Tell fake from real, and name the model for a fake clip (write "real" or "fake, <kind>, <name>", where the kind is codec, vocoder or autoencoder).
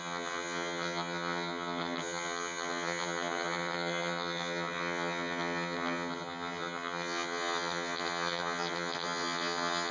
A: fake, vocoder, HiFi-GAN